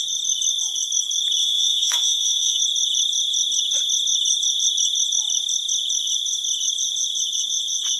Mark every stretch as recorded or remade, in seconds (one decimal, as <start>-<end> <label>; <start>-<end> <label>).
0.0-1.4 recorded; 1.4-2.6 remade; 2.6-8.0 recorded